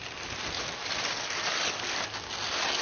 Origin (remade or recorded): recorded